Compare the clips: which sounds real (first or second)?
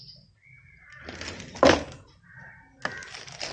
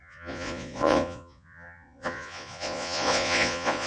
first